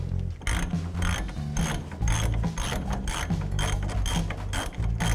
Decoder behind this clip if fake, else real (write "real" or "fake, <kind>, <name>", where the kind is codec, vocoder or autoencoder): real